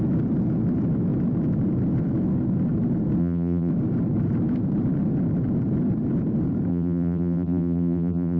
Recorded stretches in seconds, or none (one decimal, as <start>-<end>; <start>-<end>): 0.0-3.2; 3.7-6.7